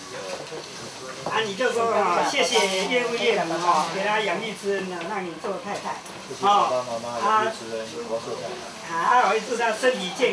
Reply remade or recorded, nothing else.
recorded